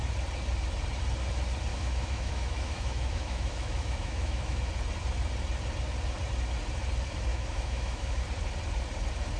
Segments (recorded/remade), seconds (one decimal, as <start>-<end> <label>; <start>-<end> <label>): 0.0-1.7 recorded; 1.7-4.7 remade; 4.7-7.3 recorded; 7.3-8.2 remade; 8.2-9.4 recorded